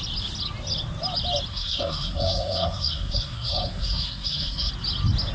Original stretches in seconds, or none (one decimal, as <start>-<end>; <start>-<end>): 0.0-1.5; 4.7-5.3